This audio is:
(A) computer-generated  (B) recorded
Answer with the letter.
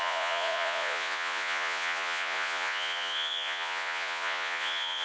A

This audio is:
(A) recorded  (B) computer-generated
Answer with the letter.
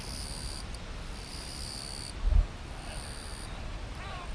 A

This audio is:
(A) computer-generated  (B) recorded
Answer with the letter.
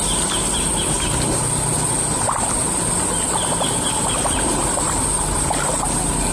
B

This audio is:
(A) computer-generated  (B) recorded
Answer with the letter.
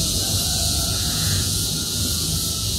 A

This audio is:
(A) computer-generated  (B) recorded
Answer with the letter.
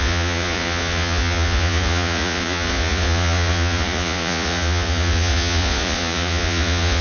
A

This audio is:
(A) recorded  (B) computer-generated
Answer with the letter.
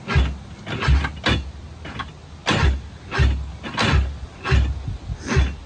A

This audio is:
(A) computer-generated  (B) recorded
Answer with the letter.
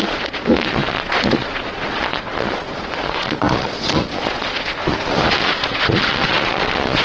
A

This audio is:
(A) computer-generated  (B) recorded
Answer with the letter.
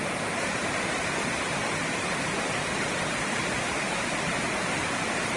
B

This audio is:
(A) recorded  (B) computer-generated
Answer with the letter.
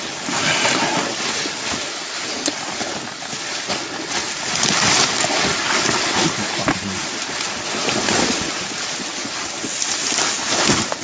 A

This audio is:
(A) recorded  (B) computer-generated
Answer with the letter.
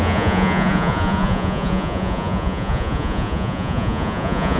B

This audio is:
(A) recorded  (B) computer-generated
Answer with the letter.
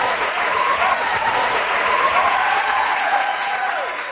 B